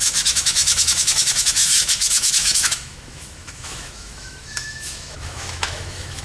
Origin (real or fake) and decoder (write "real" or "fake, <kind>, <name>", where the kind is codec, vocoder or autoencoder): fake, autoencoder, DAC-VAE